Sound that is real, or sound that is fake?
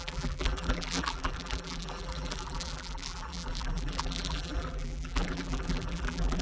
fake